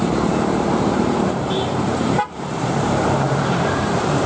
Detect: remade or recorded remade